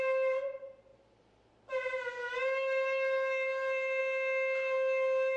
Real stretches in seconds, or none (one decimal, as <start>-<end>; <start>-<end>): 0.0-5.4